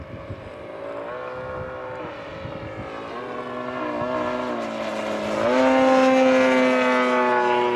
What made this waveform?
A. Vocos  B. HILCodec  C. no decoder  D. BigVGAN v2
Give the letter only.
C